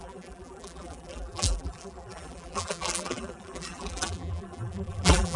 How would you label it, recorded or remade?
remade